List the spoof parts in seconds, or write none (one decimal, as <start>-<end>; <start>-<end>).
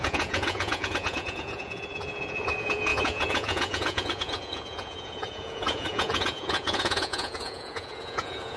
0.0-8.6